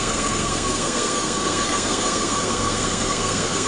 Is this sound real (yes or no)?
no